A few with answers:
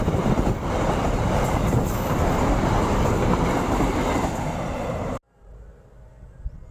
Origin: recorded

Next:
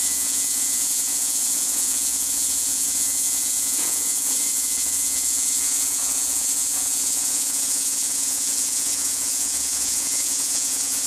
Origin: remade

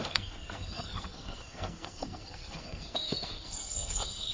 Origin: remade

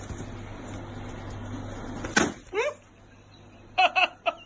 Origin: recorded